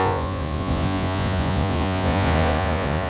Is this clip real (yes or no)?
no